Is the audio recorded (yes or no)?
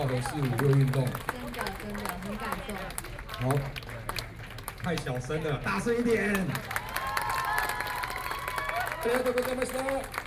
yes